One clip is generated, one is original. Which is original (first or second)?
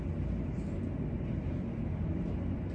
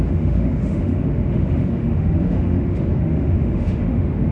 first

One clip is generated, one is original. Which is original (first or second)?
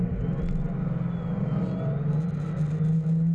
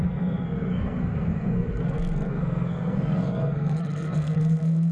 first